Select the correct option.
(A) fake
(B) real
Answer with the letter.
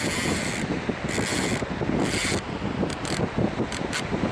A